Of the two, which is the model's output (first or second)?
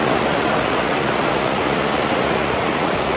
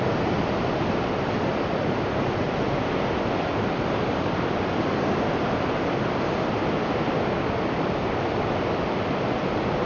first